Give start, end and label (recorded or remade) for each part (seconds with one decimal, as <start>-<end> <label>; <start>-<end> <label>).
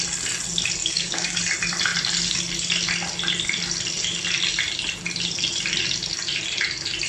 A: 0.0-0.8 recorded; 0.8-1.4 remade; 1.4-7.1 recorded